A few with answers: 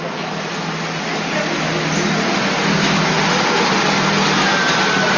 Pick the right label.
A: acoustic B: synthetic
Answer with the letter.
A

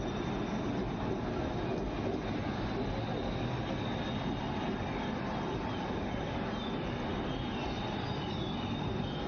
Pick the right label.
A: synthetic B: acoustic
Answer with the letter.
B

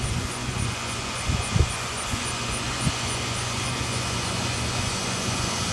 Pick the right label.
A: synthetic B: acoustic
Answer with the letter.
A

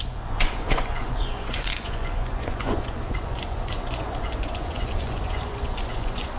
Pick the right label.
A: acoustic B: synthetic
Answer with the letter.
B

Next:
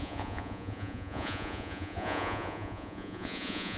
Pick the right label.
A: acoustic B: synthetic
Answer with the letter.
B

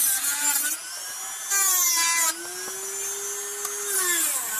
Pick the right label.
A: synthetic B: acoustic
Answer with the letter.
B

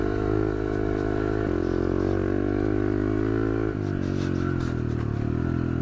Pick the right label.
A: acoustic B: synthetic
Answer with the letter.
A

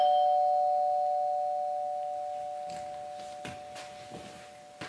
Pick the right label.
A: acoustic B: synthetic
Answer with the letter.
A